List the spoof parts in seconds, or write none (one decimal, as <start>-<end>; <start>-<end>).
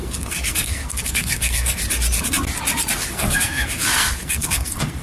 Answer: 0.0-1.8; 3.1-5.0